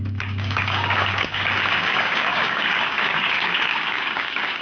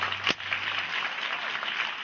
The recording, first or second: second